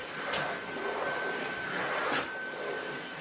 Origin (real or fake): real